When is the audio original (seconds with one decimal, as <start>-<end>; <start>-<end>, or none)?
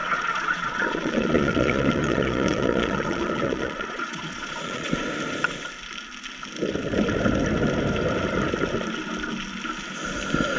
4.9-10.6